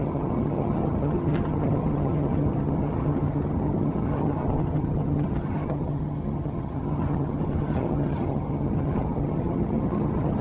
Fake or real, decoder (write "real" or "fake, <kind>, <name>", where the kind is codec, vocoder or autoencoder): fake, vocoder, HiFi-GAN